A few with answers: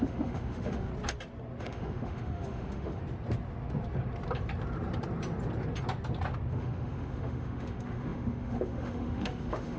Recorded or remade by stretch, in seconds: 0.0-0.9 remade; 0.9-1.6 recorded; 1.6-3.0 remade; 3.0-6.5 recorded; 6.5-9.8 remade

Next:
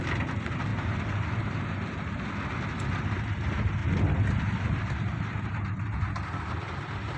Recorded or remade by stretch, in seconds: 0.0-0.7 recorded; 0.7-2.2 remade; 2.2-3.8 recorded; 3.8-7.2 remade